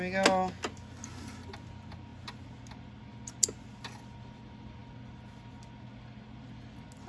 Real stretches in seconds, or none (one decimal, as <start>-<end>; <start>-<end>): 0.0-7.1